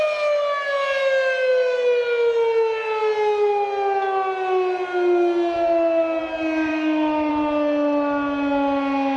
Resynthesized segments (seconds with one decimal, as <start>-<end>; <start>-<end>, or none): 6.7-7.3